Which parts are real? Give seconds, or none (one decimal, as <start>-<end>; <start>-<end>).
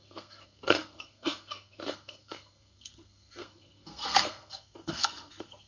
none